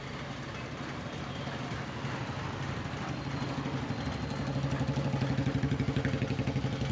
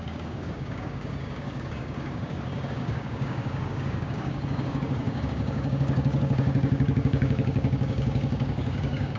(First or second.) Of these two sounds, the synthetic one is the second